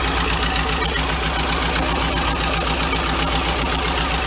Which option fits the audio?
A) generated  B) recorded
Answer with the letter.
B